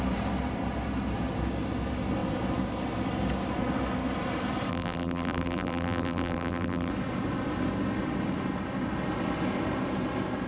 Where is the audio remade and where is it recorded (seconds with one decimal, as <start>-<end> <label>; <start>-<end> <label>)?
0.0-4.7 recorded; 4.7-6.9 remade; 6.9-10.5 recorded